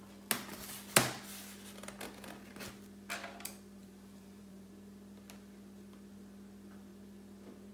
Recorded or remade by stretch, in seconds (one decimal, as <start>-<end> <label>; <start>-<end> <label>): 0.0-3.8 recorded; 3.8-4.7 remade; 4.7-7.7 recorded